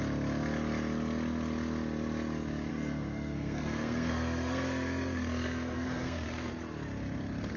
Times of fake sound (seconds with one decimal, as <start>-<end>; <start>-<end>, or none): 2.7-6.5